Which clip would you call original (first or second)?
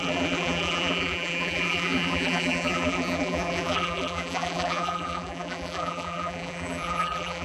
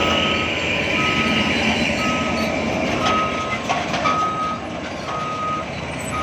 second